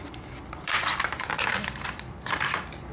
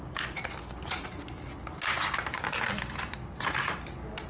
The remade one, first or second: first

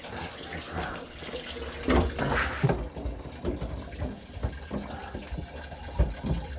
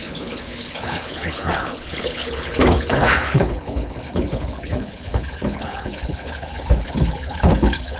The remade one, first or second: second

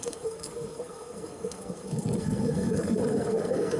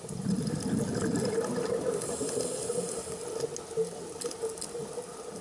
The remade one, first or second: first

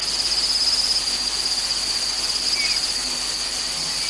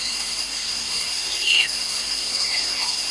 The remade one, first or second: second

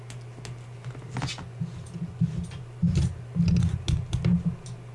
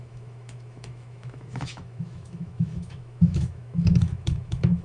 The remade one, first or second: second